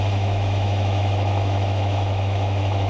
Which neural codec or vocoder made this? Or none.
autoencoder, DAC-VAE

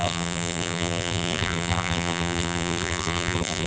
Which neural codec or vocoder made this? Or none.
vocoder, BigVGAN v2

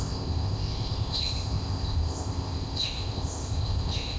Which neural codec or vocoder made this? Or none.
codec, ZipCodec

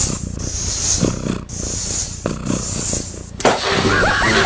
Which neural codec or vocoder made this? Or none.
none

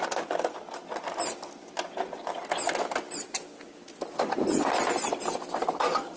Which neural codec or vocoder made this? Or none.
none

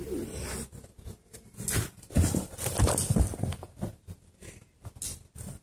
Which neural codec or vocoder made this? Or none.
none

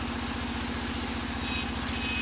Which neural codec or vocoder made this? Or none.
none